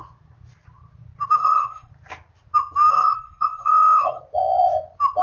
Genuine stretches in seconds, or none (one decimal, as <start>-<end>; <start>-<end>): 0.0-1.4; 1.9-2.9; 4.2-5.2